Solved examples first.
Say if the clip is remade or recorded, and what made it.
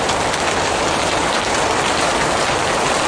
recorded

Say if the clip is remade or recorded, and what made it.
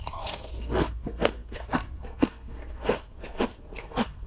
remade, codec, SNAC